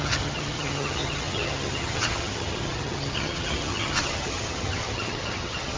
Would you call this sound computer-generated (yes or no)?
yes